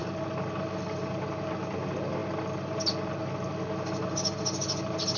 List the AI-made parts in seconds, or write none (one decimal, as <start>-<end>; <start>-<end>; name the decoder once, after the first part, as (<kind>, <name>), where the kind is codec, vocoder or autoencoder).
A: none